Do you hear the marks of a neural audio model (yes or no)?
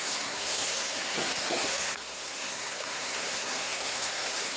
yes